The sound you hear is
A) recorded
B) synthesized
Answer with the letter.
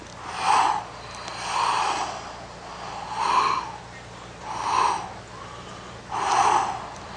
A